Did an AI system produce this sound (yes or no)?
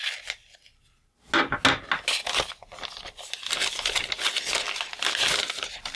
no